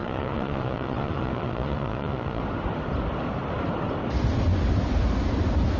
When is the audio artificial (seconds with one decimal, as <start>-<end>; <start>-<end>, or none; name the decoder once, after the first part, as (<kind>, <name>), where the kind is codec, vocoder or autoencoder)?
0.0-2.4 (vocoder, Vocos)

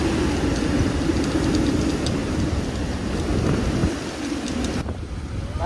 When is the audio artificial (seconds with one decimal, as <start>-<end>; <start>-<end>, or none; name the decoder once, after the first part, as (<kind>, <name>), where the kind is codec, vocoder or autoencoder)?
2.2-3.1 (vocoder, BigVGAN v2)

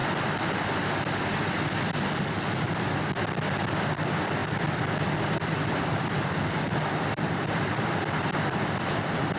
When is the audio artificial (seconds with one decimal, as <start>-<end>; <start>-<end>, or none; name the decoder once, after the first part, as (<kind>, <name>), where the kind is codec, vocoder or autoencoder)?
4.4-9.4 (vocoder, BigVGAN v2)

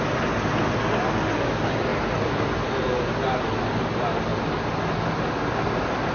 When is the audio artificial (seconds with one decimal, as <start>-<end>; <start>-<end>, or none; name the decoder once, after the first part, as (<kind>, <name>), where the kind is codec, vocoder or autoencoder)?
none

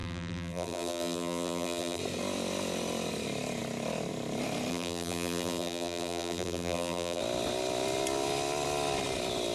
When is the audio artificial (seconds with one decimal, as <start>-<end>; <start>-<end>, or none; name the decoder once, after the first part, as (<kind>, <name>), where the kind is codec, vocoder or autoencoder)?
0.0-2.0 (vocoder, BigVGAN v2); 4.7-7.2

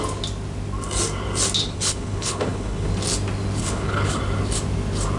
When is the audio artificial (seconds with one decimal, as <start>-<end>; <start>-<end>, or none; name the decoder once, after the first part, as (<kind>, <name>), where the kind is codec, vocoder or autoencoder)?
1.6-2.9 (codec, HILCodec); 3.6-4.2

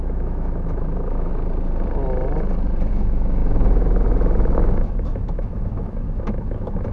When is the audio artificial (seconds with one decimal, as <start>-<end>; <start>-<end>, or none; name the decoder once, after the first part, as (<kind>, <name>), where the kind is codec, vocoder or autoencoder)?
0.0-1.3 (autoencoder, DAC-VAE); 2.9-6.9

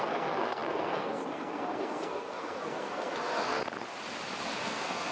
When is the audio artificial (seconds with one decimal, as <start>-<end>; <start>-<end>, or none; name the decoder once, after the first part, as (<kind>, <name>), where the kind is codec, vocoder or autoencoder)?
0.0-3.6 (codec, SNAC); 4.4-5.1